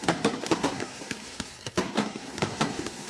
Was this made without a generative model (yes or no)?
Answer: no